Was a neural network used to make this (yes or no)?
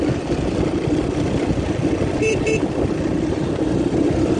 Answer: no